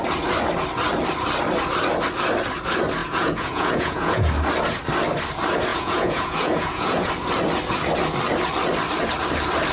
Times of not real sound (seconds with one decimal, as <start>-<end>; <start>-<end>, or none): 3.0-4.3; 5.7-7.1